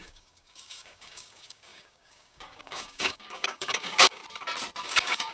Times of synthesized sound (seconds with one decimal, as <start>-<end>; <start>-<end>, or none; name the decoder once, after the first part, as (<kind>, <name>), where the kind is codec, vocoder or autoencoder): 0.0-4.2 (codec, DAC); 4.8-5.3